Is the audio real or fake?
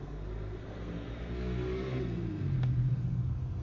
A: fake